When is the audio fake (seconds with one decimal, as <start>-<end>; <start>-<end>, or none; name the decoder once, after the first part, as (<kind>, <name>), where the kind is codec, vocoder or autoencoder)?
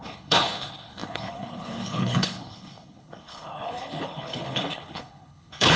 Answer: 0.0-5.8 (codec, HILCodec)